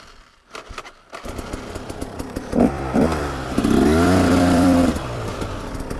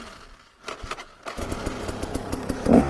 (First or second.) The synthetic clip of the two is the first